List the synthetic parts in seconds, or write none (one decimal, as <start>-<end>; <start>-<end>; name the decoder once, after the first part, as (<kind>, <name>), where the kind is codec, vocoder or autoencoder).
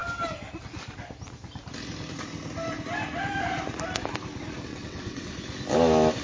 4.7-5.3 (vocoder, WaveNeXt)